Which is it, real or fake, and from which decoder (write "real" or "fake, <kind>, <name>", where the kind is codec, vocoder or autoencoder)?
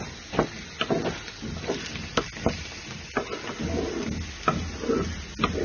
real